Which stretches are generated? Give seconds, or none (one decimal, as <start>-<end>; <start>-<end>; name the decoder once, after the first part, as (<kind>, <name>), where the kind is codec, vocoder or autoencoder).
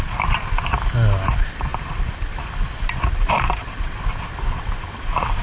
none